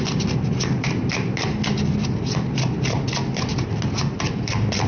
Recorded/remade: recorded